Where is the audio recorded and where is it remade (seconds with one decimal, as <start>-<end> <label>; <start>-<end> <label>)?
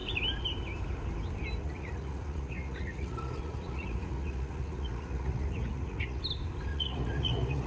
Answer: 0.0-1.6 recorded; 1.6-6.2 remade; 6.2-6.7 recorded; 6.7-7.7 remade